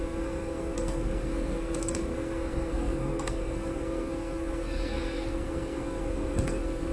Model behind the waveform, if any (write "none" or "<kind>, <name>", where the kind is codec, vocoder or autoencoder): codec, SNAC